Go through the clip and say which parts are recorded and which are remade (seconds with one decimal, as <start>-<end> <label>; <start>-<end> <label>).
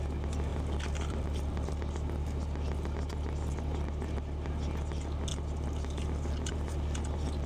0.0-0.5 recorded; 0.5-1.7 remade; 1.7-7.5 recorded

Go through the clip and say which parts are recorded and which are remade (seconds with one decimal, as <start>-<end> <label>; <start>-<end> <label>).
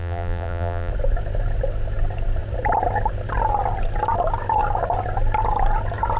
0.0-0.9 remade; 0.9-6.2 recorded